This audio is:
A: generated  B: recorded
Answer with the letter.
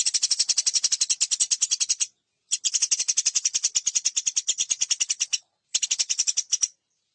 B